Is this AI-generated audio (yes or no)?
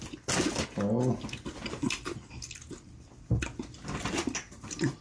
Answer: no